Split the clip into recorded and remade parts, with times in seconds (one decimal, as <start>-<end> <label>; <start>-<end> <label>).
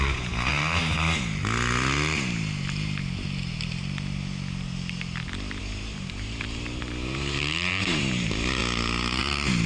0.0-0.5 remade; 0.5-5.6 recorded; 5.6-8.6 remade; 8.6-9.2 recorded; 9.2-9.7 remade